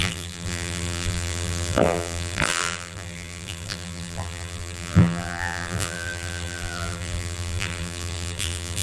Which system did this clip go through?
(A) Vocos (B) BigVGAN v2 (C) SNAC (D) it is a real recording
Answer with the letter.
B